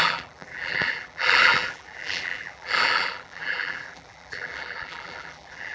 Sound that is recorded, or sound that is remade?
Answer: remade